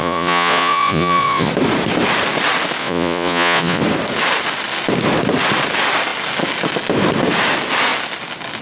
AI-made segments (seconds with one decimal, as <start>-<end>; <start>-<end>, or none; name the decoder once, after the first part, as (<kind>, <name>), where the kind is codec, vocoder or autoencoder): 0.0-1.5 (vocoder, Vocos); 2.8-3.8